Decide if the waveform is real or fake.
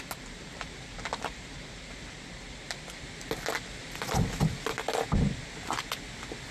real